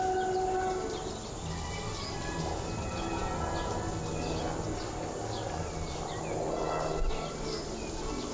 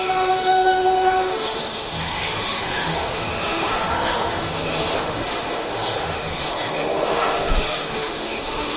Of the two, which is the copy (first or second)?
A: second